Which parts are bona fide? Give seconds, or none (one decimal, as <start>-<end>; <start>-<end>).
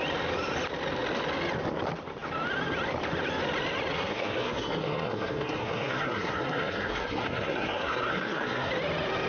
0.0-3.9; 8.7-9.3